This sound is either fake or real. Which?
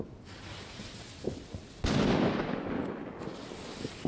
real